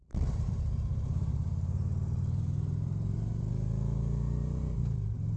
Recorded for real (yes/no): no